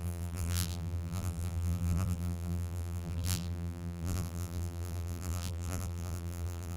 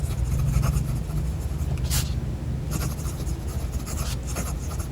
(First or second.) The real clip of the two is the second